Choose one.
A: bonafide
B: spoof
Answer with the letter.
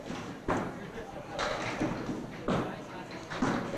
A